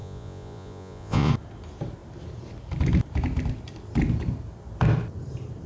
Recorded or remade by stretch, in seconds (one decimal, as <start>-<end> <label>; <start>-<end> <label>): 0.0-1.3 remade; 1.3-5.7 recorded